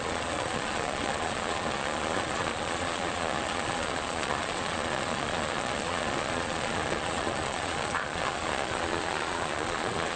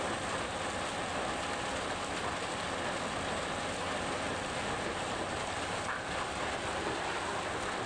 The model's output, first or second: first